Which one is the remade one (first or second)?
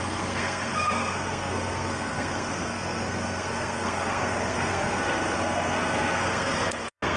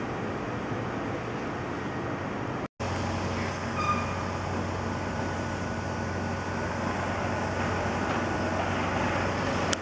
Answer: first